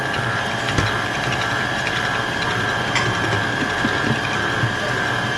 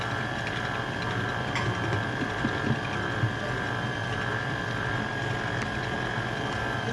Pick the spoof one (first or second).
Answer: first